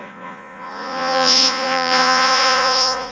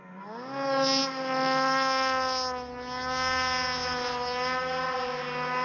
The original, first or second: second